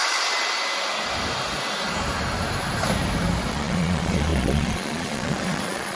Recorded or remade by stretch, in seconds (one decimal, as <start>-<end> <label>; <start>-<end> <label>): 0.0-3.5 recorded; 3.5-5.9 remade